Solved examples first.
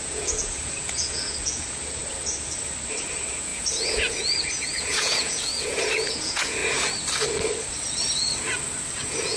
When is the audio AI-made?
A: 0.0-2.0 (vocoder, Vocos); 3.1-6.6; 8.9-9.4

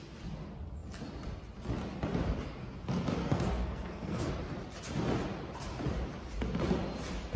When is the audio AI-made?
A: 3.2-4.3 (codec, SNAC)